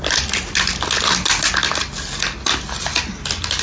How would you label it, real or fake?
real